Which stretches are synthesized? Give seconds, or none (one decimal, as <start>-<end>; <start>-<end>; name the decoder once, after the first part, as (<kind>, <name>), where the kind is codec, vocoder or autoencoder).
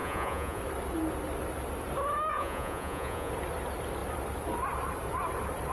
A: 0.0-0.6 (vocoder, Vocos); 2.3-3.3